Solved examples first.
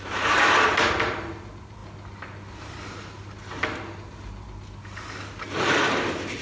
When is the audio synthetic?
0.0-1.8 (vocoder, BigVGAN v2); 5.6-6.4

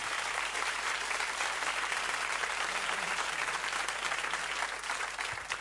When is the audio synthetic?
0.0-3.4 (vocoder, BigVGAN v2)

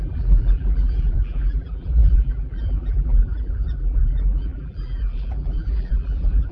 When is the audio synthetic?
0.0-6.5 (vocoder, BigVGAN v2)